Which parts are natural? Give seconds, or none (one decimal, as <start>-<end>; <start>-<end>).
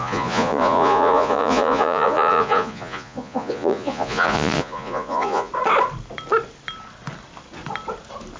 5.5-8.4